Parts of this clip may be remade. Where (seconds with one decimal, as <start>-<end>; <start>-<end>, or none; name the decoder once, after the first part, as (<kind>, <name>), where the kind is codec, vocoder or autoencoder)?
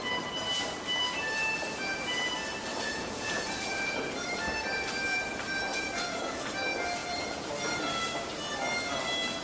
2.7-4.4 (vocoder, Vocos); 5.7-6.5; 7.0-7.5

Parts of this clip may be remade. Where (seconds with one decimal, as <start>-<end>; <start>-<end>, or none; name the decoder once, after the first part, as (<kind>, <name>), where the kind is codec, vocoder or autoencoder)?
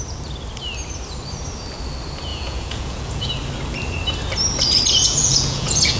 2.3-3.3 (vocoder, Vocos); 5.2-6.0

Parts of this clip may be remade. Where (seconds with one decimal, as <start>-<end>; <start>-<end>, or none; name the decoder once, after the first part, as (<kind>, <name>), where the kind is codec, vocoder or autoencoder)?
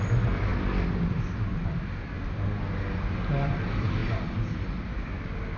none